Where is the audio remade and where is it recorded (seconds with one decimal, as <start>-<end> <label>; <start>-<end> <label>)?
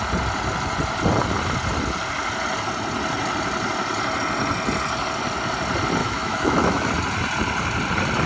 0.0-6.0 recorded; 6.0-6.9 remade; 6.9-8.3 recorded